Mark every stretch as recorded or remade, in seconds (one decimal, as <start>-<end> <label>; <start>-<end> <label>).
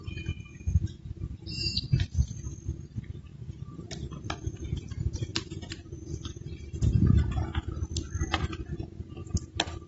0.0-9.9 recorded